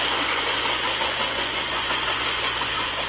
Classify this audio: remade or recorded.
remade